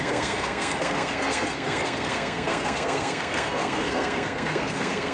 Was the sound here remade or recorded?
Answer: remade